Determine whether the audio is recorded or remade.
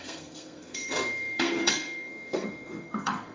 remade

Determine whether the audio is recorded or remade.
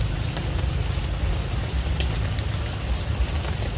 recorded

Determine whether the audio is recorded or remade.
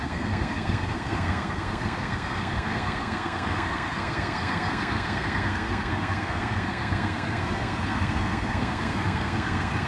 remade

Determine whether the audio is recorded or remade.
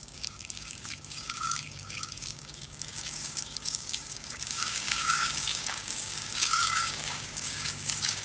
remade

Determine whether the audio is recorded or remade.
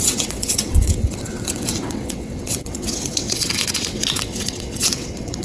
remade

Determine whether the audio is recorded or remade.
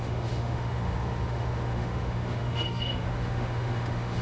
remade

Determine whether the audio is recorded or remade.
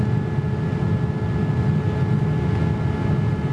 recorded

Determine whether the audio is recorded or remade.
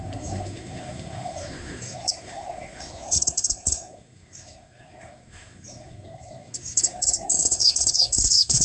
remade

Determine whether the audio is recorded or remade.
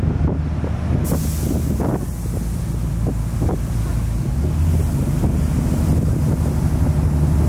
recorded